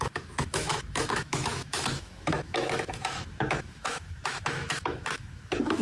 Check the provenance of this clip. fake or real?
fake